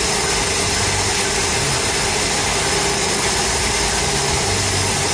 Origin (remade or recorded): recorded